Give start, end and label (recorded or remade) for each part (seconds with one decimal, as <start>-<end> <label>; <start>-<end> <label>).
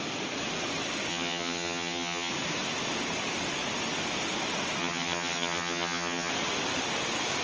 0.0-1.1 recorded; 1.1-2.3 remade; 2.3-4.8 recorded; 4.8-6.3 remade; 6.3-7.4 recorded